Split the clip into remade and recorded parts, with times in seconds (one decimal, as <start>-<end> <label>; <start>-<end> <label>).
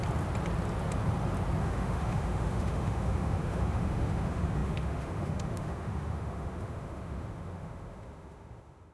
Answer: 0.0-1.6 recorded; 1.6-8.9 remade